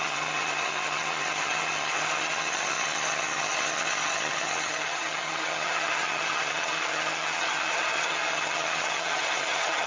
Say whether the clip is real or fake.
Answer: fake